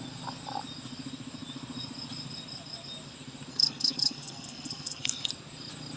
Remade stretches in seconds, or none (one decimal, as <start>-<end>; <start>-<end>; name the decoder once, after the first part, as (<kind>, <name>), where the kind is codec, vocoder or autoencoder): 3.5-5.3 (codec, SNAC)

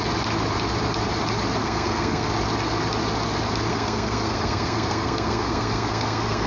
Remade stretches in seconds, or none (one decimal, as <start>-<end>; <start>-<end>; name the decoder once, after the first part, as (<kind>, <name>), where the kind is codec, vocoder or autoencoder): 1.6-2.3 (codec, SNAC); 3.7-6.5

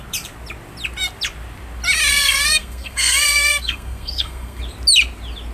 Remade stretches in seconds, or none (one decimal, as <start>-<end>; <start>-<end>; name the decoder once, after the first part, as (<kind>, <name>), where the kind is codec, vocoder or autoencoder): 2.1-4.6 (codec, SNAC)

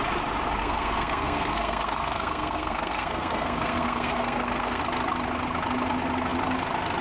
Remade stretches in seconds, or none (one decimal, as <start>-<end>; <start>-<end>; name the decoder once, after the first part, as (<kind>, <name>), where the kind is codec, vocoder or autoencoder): 0.6-4.8 (codec, SNAC)

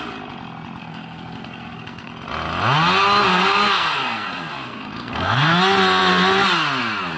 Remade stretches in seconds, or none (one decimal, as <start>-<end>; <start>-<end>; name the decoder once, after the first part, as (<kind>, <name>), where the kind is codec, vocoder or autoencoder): 0.8-2.1 (codec, SNAC); 3.3-5.6

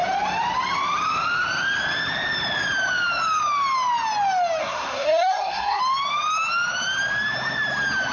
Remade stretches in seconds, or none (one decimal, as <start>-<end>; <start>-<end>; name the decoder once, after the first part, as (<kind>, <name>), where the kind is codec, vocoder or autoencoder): 4.6-5.8 (codec, SNAC)

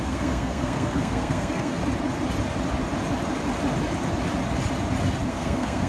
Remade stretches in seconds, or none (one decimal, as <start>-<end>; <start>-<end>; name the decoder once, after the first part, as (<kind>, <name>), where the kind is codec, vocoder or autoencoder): 0.0-1.8 (codec, SNAC); 5.3-5.9

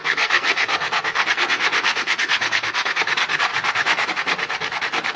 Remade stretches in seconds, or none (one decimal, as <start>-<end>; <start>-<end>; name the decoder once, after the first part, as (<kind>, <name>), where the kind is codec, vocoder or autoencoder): 0.0-3.1 (codec, SNAC); 3.5-4.1